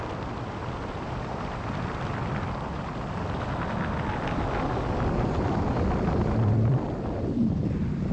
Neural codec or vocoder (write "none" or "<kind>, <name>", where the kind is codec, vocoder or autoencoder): none